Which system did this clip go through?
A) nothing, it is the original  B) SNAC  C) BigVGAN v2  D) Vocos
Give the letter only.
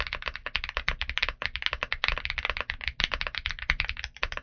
A